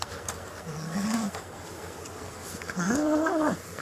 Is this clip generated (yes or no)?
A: yes